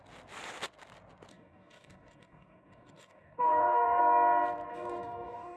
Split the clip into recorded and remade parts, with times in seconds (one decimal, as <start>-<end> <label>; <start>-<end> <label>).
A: 0.0-1.3 recorded; 1.3-4.0 remade; 4.0-4.7 recorded; 4.7-5.6 remade